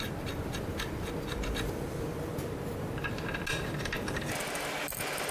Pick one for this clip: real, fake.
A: real